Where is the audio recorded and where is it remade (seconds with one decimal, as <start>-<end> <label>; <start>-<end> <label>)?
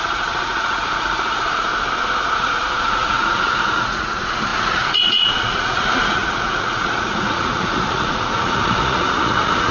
0.0-1.7 remade; 1.7-2.2 recorded; 2.2-9.7 remade